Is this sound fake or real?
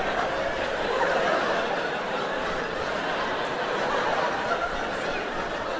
real